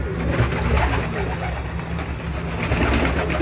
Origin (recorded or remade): recorded